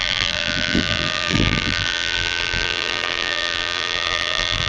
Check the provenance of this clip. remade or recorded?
remade